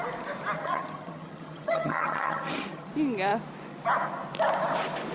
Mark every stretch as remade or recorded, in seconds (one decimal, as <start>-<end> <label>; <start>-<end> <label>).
0.0-0.6 recorded; 0.6-2.9 remade; 2.9-5.1 recorded